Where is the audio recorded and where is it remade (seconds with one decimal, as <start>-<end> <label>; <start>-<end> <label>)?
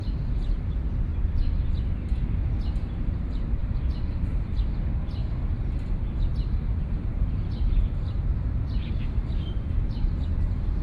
0.0-1.1 remade; 1.1-2.4 recorded; 2.4-5.2 remade; 5.2-6.8 recorded; 6.8-10.8 remade